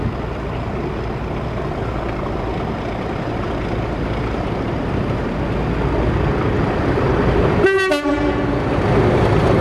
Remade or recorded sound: recorded